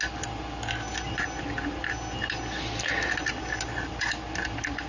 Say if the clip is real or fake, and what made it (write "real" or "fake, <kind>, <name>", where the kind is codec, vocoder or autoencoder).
real